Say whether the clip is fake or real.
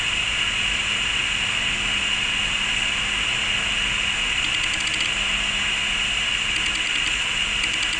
real